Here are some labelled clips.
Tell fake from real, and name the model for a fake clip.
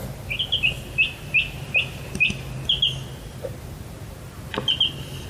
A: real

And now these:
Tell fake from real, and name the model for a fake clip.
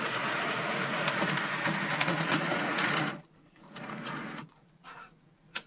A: fake, vocoder, Vocos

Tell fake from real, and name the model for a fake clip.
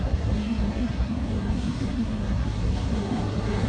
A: fake, codec, SNAC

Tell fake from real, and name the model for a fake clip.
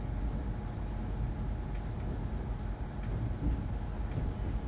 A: real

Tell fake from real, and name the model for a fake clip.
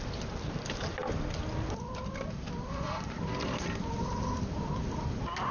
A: real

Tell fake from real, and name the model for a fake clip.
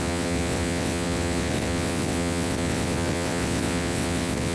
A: fake, vocoder, WaveNeXt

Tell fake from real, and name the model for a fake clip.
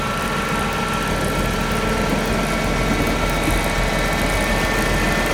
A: real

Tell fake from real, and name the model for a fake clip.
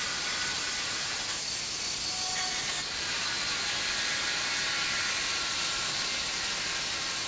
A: real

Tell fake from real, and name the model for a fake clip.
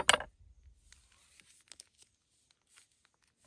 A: real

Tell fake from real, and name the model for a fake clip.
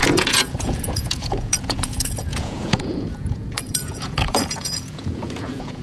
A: fake, vocoder, Vocos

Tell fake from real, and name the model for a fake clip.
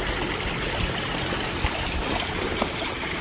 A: real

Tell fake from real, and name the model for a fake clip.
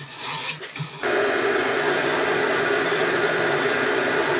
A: fake, vocoder, Vocos